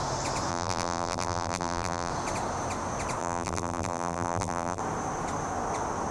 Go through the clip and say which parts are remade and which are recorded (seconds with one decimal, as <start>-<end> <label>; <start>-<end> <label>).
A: 0.0-0.5 recorded; 0.5-2.1 remade; 2.1-3.2 recorded; 3.2-4.8 remade; 4.8-6.1 recorded